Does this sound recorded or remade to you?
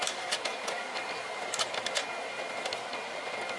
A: recorded